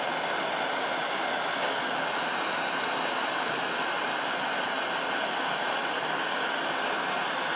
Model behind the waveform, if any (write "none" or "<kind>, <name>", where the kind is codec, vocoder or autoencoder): none